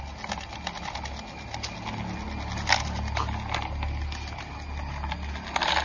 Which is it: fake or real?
real